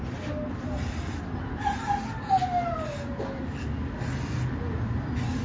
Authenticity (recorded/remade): recorded